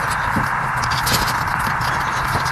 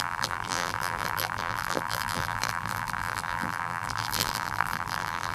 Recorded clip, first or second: first